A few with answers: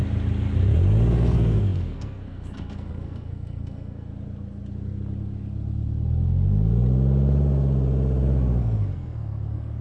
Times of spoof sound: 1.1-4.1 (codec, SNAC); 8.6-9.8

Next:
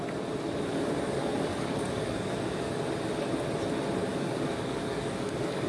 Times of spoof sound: 0.7-2.8 (codec, DAC); 4.1-5.7

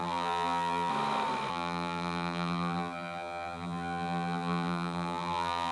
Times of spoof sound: 0.0-0.9 (vocoder, BigVGAN v2); 1.5-5.7